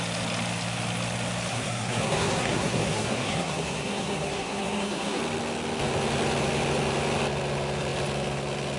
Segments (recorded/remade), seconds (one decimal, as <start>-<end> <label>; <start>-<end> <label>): 0.0-1.5 recorded; 1.5-5.2 remade; 5.2-8.8 recorded